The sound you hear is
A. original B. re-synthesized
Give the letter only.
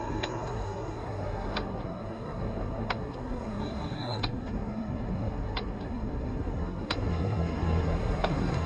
B